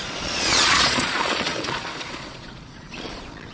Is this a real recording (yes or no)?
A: no